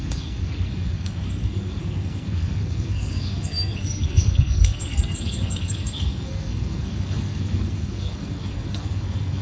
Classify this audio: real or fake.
fake